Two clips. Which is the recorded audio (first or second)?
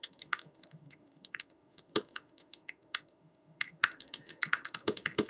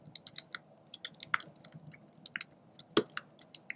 second